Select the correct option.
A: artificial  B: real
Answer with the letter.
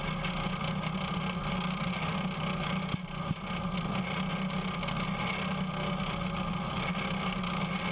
B